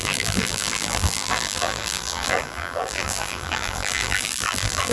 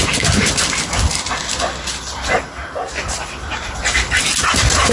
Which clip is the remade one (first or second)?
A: first